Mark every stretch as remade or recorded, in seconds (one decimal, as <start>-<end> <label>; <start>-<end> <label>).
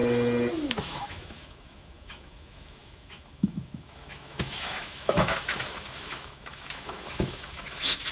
0.0-0.7 recorded; 0.7-8.1 remade